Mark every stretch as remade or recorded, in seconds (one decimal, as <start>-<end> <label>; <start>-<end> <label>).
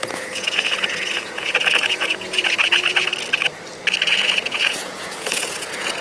0.0-3.1 remade; 3.1-4.1 recorded; 4.1-6.0 remade